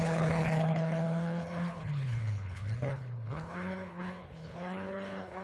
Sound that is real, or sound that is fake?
fake